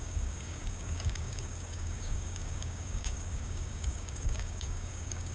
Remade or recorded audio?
remade